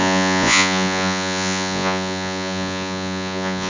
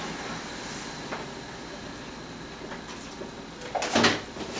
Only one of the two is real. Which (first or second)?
second